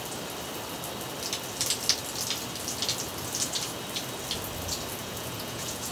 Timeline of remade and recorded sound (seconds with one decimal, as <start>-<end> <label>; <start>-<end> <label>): 0.0-5.0 recorded; 5.0-5.9 remade